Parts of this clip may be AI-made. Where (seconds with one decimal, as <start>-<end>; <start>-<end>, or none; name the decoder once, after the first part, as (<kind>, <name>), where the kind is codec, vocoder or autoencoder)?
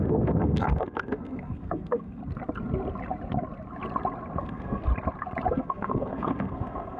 0.0-2.2 (codec, SNAC); 4.4-4.9; 5.5-7.0